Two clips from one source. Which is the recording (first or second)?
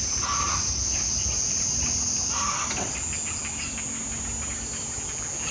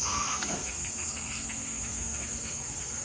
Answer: first